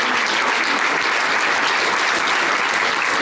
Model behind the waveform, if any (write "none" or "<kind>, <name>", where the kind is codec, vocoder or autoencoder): none